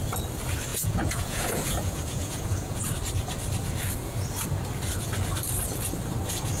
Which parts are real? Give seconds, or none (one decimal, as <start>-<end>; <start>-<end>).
0.0-0.7; 2.8-6.6